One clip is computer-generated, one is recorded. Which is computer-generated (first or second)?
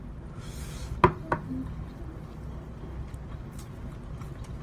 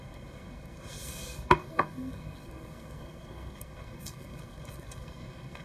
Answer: second